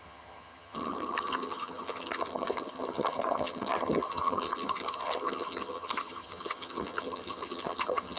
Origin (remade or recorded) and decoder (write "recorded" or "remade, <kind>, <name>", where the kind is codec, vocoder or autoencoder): remade, vocoder, HiFi-GAN